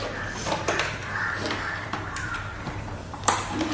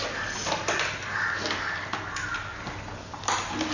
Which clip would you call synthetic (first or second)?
first